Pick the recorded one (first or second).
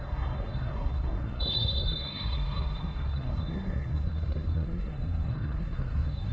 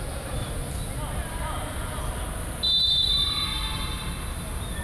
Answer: second